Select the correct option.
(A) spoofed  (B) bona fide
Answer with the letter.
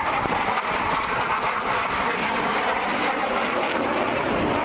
B